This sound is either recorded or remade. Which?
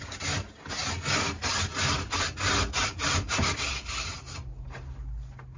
recorded